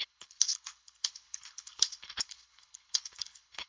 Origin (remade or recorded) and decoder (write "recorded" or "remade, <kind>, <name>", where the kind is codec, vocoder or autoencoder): remade, codec, HILCodec